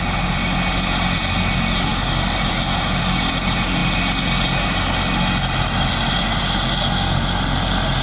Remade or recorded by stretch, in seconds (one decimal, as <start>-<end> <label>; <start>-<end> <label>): 0.0-8.0 recorded